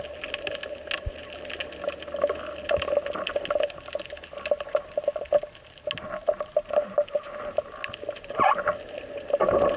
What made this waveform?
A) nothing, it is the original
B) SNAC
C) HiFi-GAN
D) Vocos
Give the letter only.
A